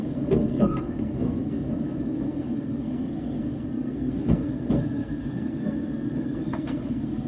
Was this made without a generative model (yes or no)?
no